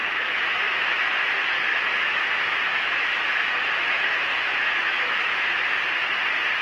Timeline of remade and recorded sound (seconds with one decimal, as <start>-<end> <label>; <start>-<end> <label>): 0.0-1.1 remade; 1.1-1.7 recorded; 1.7-5.7 remade; 5.7-6.6 recorded